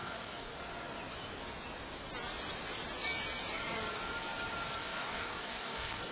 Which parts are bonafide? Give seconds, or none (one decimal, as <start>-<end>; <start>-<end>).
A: 0.6-4.8